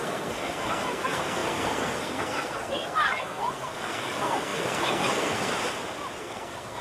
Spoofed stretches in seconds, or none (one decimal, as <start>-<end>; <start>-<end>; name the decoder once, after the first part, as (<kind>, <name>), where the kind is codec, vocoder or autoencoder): 0.0-5.5 (codec, SNAC); 6.2-6.8